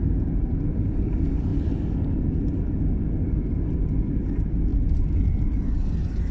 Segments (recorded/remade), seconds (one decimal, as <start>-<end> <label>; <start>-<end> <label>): 0.0-4.7 remade; 4.7-6.3 recorded